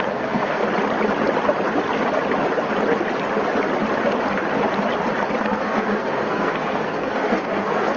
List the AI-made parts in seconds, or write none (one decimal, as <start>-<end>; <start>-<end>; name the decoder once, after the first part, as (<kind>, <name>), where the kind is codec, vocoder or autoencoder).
0.0-0.6 (codec, SNAC); 5.4-8.0